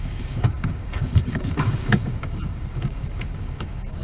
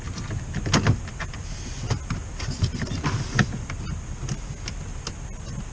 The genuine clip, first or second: second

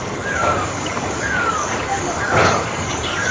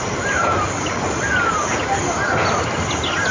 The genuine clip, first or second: second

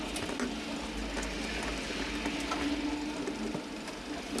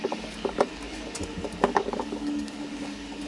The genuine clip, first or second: first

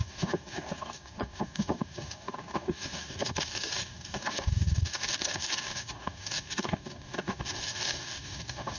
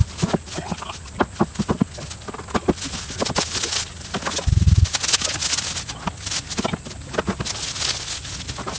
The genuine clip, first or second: second